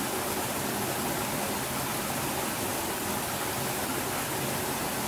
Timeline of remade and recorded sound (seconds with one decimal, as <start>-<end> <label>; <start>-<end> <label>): 0.0-5.1 recorded